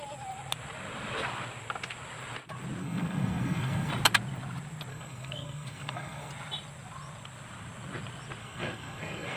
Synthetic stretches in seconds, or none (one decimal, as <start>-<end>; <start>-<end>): 2.8-3.9; 4.9-6.3; 8.4-9.4